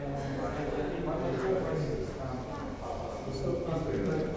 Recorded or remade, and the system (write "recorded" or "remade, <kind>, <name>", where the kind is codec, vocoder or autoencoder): recorded